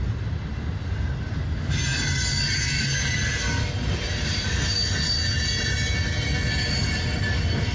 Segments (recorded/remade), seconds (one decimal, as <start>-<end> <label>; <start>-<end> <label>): 0.0-7.7 recorded